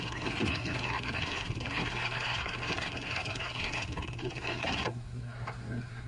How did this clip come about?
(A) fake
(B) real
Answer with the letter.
A